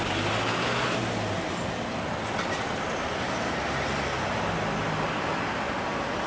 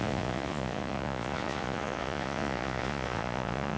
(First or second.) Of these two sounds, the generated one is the second